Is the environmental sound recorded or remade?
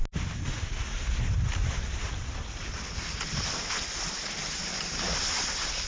recorded